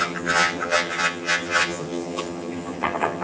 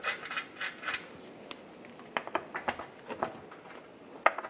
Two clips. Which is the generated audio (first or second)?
first